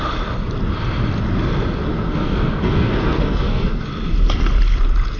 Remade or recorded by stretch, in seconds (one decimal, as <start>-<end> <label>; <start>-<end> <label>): 0.0-1.9 recorded; 1.9-3.8 remade; 3.8-5.2 recorded